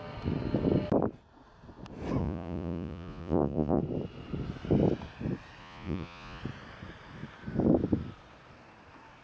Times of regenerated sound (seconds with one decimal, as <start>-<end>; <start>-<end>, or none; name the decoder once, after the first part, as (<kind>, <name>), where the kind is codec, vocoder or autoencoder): 2.2-3.8 (vocoder, Vocos); 5.6-6.4